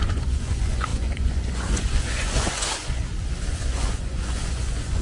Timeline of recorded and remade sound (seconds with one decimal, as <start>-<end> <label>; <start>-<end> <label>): 0.0-3.0 remade; 3.0-3.5 recorded; 3.5-5.0 remade